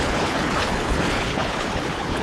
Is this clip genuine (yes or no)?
no